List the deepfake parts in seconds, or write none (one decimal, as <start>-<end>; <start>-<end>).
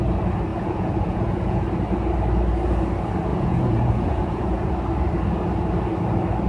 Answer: 0.5-1.6; 3.3-4.7